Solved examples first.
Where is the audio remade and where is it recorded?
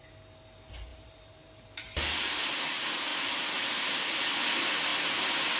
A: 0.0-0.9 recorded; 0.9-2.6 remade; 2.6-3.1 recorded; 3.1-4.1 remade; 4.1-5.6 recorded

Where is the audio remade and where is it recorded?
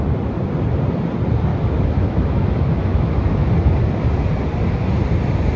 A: 0.0-1.5 recorded; 1.5-3.5 remade; 3.5-5.6 recorded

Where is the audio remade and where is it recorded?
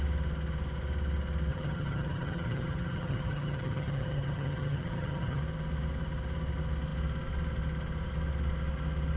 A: 0.0-1.5 recorded; 1.5-5.4 remade; 5.4-9.2 recorded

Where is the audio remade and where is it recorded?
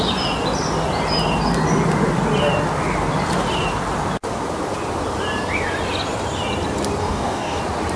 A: 0.0-7.0 recorded; 7.0-7.6 remade; 7.6-8.0 recorded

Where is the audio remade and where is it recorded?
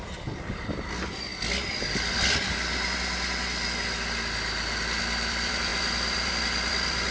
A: 0.0-1.3 remade; 1.3-5.0 recorded; 5.0-7.1 remade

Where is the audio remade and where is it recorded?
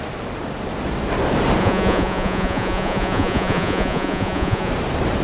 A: 0.0-1.6 recorded; 1.6-4.7 remade; 4.7-5.2 recorded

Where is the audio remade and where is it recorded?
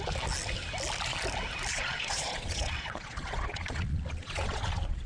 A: 0.0-1.7 recorded; 1.7-5.1 remade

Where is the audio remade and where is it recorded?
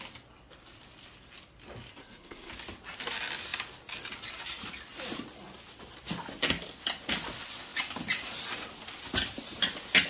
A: 0.0-1.9 recorded; 1.9-2.5 remade; 2.5-10.1 recorded